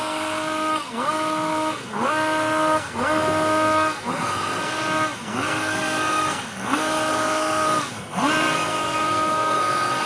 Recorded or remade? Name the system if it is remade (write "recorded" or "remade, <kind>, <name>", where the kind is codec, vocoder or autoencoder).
remade, codec, SNAC